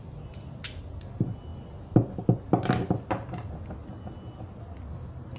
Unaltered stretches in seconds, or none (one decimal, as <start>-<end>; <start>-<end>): 0.0-5.4